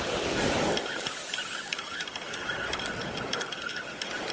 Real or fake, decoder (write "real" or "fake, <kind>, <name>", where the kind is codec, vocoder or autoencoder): real